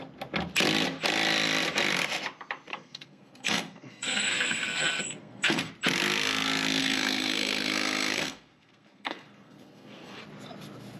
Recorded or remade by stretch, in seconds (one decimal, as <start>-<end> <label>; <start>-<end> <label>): 0.0-2.7 recorded; 2.7-5.7 remade; 5.7-6.8 recorded; 6.8-10.2 remade; 10.2-11.0 recorded

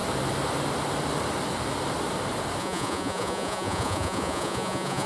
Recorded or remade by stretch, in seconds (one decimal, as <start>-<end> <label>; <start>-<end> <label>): 0.0-2.6 recorded; 2.6-5.1 remade

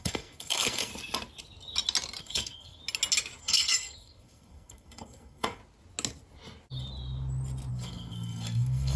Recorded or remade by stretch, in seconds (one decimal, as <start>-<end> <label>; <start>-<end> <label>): 0.0-0.9 remade; 0.9-2.2 recorded; 2.2-2.8 remade; 2.8-3.4 recorded; 3.4-5.6 remade; 5.6-7.7 recorded; 7.7-9.0 remade

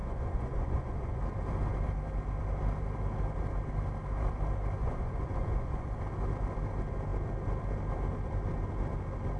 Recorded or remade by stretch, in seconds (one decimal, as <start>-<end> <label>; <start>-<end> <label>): 0.0-1.2 remade; 1.2-4.8 recorded; 4.8-6.0 remade; 6.0-9.4 recorded